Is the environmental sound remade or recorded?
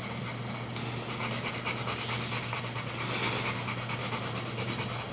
recorded